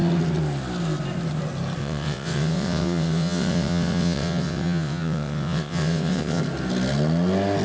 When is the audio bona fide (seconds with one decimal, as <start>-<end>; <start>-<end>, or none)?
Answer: 0.0-1.8; 6.4-7.6